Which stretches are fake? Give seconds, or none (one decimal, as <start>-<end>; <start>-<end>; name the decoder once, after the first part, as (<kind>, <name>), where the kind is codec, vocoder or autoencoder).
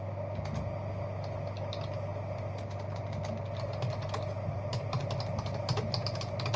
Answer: none